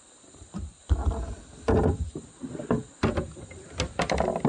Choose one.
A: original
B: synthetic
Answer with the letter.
A